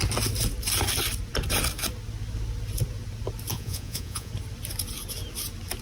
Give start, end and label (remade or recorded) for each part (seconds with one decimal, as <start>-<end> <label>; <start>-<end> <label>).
0.0-3.5 recorded; 3.5-4.3 remade; 4.3-5.8 recorded